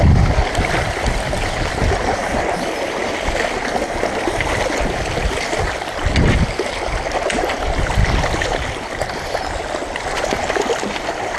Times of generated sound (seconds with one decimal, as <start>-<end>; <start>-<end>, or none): none